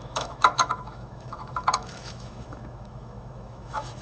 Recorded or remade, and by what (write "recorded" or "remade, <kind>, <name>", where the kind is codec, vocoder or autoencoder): remade, autoencoder, DAC-VAE